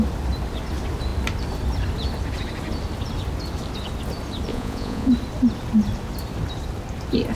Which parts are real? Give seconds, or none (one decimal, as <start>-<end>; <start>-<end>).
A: 0.0-4.5; 5.1-7.3